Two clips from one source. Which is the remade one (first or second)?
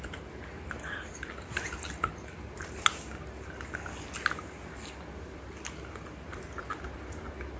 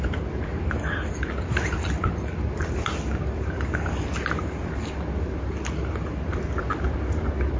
second